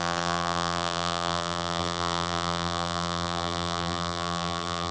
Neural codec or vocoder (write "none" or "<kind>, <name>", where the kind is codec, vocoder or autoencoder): vocoder, BigVGAN v2